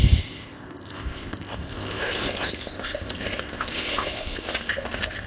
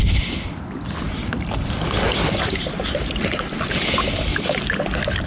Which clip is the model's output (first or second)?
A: first